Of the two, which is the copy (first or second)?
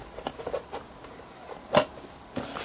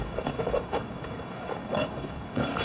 second